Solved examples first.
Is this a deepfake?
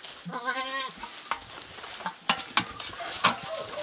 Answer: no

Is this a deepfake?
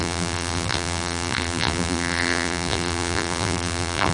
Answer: yes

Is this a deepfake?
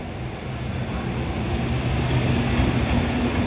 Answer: no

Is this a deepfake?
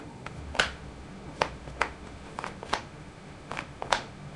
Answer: yes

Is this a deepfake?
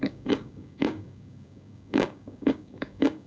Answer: yes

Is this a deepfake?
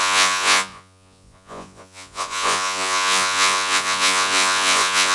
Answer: yes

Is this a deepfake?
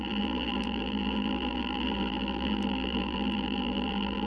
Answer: yes